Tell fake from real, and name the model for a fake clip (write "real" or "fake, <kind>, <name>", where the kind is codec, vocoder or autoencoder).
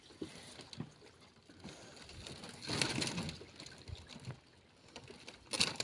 real